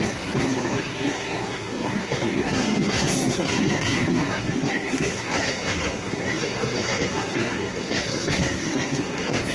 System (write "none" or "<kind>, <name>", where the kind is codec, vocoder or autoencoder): codec, SNAC